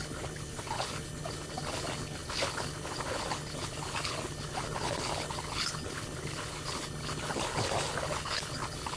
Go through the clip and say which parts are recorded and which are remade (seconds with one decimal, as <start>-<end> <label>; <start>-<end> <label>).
0.0-9.0 remade